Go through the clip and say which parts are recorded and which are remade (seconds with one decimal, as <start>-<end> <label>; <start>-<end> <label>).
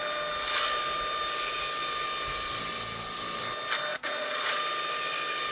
0.0-3.9 recorded; 3.9-4.6 remade; 4.6-5.5 recorded